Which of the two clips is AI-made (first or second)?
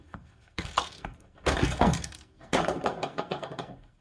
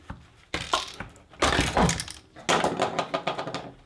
first